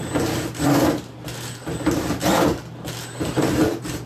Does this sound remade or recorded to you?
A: recorded